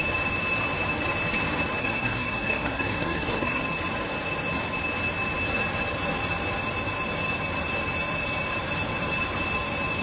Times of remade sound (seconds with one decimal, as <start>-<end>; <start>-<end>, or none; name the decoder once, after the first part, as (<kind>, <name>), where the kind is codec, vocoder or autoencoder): 1.8-3.6 (codec, SNAC)